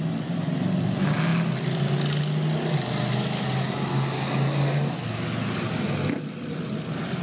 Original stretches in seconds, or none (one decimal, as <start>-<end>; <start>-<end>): 0.0-7.2